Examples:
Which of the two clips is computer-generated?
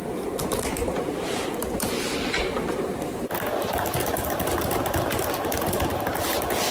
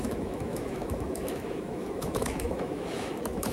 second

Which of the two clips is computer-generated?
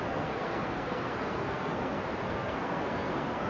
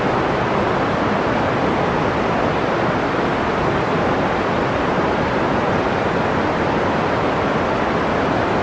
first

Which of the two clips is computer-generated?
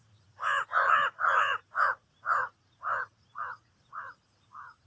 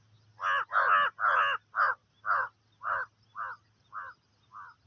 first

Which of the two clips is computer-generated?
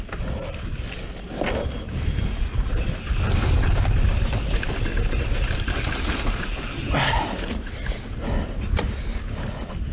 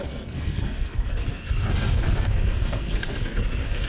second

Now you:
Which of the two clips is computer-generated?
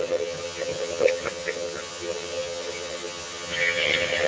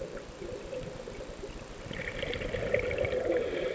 first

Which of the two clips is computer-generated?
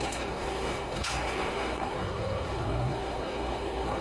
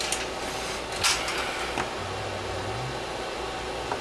first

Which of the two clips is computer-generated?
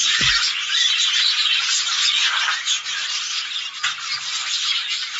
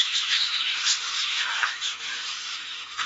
second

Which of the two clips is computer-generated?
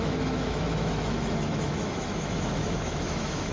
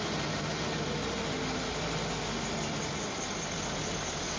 first